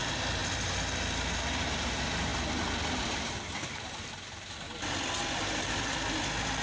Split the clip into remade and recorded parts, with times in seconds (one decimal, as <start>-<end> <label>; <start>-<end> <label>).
0.0-0.4 remade; 0.4-1.3 recorded; 1.3-2.3 remade; 2.3-3.0 recorded; 3.0-6.6 remade